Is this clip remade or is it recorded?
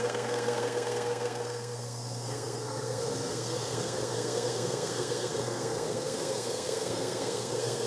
remade